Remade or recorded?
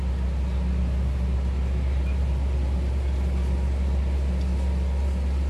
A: recorded